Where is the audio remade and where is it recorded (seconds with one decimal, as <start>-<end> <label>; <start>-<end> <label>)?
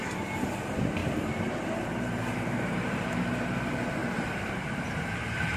0.0-1.0 recorded; 1.0-3.4 remade; 3.4-4.0 recorded; 4.0-5.6 remade